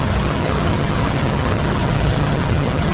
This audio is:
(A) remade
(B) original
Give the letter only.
A